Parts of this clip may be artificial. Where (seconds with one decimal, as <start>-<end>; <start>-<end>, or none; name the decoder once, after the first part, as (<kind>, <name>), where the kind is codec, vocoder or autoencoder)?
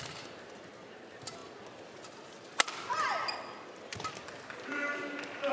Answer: none